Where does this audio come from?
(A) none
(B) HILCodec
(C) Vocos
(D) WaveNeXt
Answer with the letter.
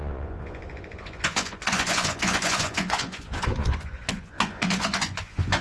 C